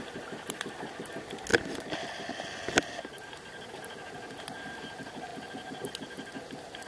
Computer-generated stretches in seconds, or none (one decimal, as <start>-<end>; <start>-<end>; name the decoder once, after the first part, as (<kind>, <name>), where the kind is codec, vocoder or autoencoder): 1.5-3.7 (vocoder, BigVGAN v2)